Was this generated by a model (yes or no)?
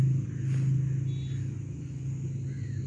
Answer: no